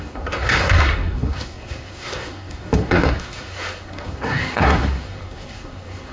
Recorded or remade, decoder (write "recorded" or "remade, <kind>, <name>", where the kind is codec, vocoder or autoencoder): remade, codec, SNAC